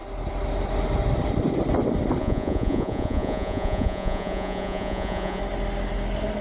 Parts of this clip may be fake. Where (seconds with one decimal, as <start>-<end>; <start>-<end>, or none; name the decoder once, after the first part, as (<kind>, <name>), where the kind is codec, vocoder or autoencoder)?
2.2-5.4 (vocoder, Vocos)